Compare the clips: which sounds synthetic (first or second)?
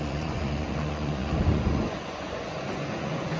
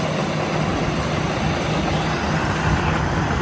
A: first